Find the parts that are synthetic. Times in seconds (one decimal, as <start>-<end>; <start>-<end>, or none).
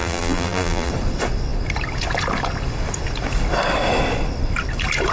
0.0-0.9